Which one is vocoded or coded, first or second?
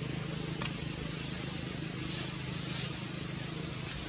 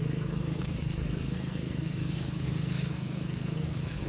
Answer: second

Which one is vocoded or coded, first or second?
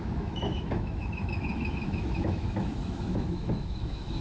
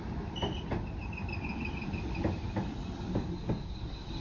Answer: first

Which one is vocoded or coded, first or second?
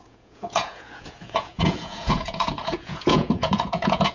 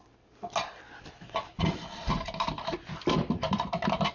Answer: first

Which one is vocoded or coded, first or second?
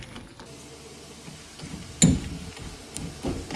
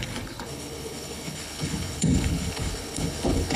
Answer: second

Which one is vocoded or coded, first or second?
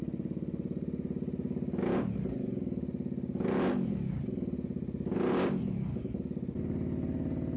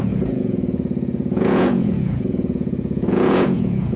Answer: second